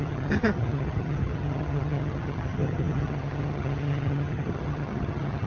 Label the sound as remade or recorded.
remade